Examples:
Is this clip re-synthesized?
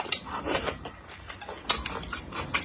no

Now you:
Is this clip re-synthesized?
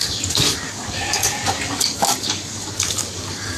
yes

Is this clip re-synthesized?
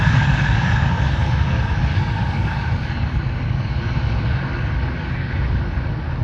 yes